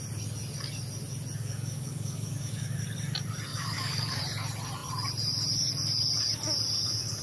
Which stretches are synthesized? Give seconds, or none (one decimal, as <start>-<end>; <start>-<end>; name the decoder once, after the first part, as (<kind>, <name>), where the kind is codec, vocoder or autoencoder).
1.4-2.8 (codec, DAC); 3.5-4.2